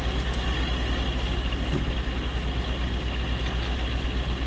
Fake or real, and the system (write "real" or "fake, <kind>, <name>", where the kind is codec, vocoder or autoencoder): real